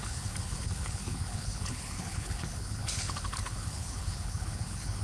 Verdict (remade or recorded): remade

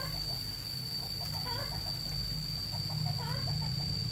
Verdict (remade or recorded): recorded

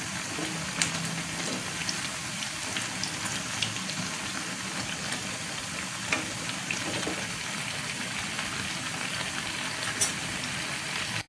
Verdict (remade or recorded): recorded